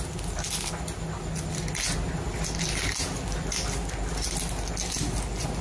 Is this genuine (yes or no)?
yes